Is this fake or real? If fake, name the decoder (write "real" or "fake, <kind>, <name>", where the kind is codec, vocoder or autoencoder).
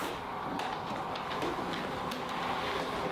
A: real